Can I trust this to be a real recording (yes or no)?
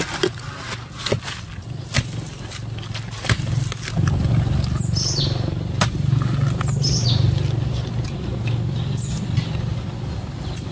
yes